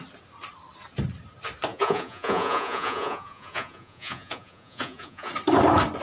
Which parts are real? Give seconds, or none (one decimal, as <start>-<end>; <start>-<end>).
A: 0.0-1.7; 5.3-6.0